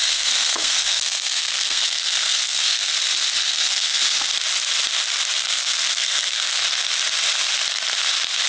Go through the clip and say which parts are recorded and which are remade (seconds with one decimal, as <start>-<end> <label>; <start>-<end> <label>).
0.0-2.9 remade; 2.9-3.4 recorded; 3.4-4.0 remade; 4.0-5.4 recorded; 5.4-6.6 remade; 6.6-8.5 recorded